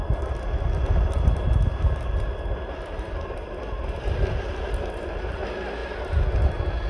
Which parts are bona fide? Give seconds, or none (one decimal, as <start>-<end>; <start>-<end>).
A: 0.0-5.8; 6.5-6.9